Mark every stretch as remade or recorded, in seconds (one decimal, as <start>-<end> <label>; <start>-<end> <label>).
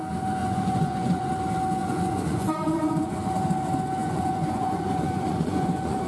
0.0-0.4 recorded; 0.4-1.3 remade; 1.3-1.8 recorded; 1.8-3.1 remade; 3.1-4.0 recorded; 4.0-6.1 remade